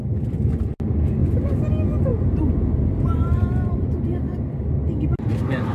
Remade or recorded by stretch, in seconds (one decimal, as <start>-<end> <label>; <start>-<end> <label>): 0.0-1.2 recorded; 1.2-1.7 remade; 1.7-2.1 recorded; 2.1-4.2 remade; 4.2-5.7 recorded

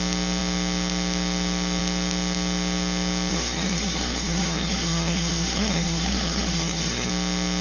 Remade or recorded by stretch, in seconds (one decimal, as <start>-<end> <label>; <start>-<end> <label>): 0.0-3.3 recorded; 3.3-7.1 remade; 7.1-7.6 recorded

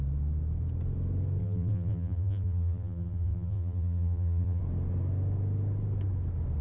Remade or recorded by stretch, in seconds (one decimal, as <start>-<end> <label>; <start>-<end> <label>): 0.0-1.4 recorded; 1.4-4.6 remade; 4.6-6.6 recorded

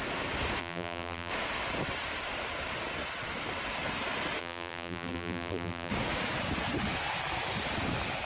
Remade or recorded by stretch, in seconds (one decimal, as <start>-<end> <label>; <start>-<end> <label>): 0.0-0.6 recorded; 0.6-1.3 remade; 1.3-4.4 recorded; 4.4-5.9 remade; 5.9-8.2 recorded

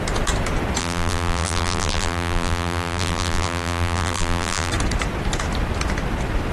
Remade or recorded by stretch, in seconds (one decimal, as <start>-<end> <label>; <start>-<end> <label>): 0.0-0.8 recorded; 0.8-4.7 remade; 4.7-6.5 recorded

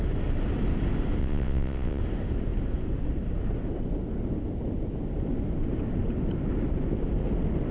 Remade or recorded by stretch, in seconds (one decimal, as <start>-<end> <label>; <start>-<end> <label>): 0.0-1.2 recorded; 1.2-2.0 remade; 2.0-7.7 recorded

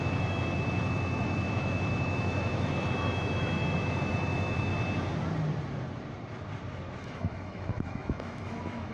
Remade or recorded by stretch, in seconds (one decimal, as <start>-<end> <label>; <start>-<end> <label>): 0.0-4.7 remade; 4.7-7.0 recorded; 7.0-8.9 remade

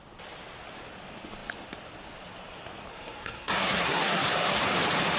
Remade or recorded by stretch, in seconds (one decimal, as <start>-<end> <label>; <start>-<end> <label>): 0.0-2.9 recorded; 2.9-4.6 remade; 4.6-5.2 recorded